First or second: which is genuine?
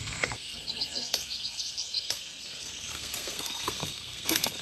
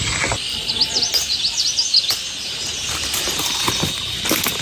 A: second